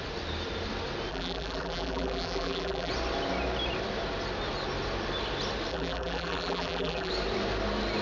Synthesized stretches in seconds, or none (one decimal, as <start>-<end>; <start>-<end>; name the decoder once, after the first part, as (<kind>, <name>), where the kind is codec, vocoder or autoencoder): 1.1-2.9 (vocoder, BigVGAN v2); 5.7-7.1